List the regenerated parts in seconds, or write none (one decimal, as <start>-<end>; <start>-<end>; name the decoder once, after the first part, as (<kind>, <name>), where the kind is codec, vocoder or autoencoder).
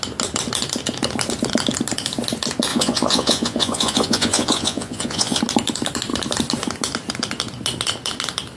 2.7-5.4 (vocoder, Vocos)